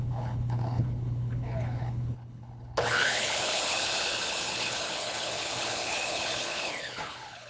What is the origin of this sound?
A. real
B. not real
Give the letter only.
B